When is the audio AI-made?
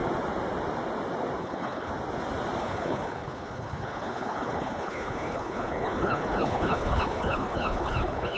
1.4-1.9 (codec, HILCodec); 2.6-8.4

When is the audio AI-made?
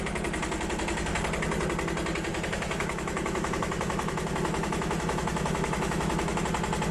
2.3-6.4 (autoencoder, DAC-VAE)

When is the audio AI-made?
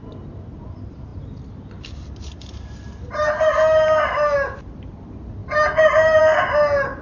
none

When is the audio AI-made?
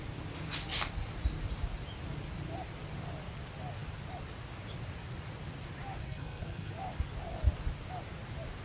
6.0-6.7 (codec, SNAC)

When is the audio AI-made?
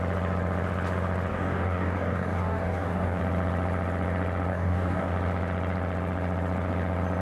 1.3-3.2 (codec, DAC); 4.5-5.1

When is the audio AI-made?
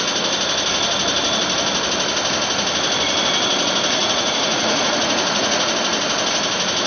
4.0-5.7 (vocoder, Vocos)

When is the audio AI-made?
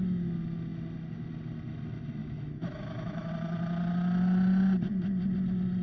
2.2-3.3 (autoencoder, DAC-VAE)